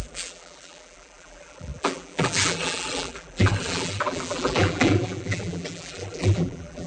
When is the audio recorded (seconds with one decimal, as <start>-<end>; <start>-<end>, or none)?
none